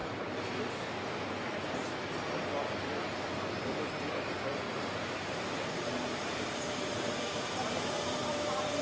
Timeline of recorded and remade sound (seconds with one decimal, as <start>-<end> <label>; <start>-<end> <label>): 0.0-0.5 remade; 0.5-4.5 recorded; 4.5-8.8 remade